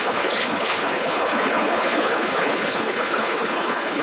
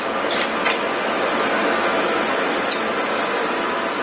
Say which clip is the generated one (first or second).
first